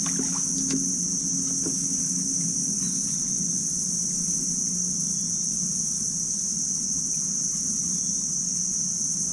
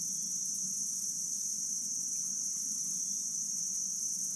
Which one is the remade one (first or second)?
second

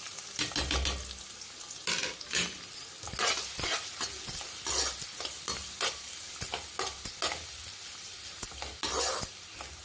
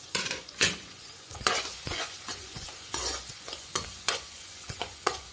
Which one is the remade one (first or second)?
second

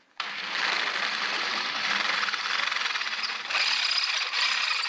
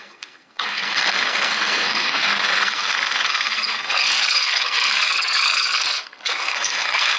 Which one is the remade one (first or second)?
second